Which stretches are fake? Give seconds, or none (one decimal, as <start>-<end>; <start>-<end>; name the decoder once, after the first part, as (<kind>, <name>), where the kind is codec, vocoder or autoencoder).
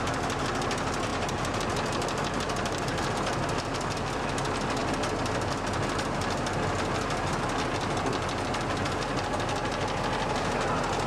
1.1-3.1 (vocoder, BigVGAN v2)